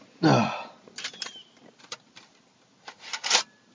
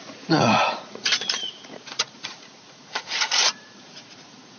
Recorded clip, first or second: first